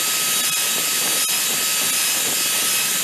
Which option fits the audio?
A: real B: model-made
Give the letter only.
A